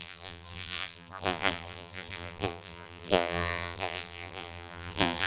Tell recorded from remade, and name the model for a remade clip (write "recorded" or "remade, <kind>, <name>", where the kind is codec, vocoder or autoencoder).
remade, vocoder, BigVGAN v2